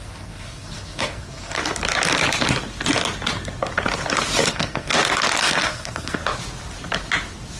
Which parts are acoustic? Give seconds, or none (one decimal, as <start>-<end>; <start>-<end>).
1.6-4.5; 4.9-5.4; 6.2-7.6